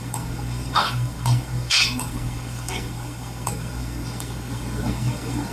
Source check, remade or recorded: remade